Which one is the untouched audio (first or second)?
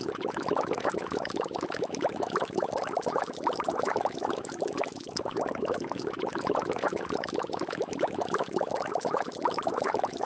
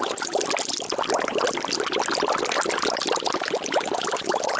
second